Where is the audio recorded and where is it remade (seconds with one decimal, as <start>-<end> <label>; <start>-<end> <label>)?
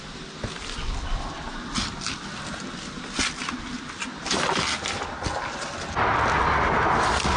0.0-7.4 recorded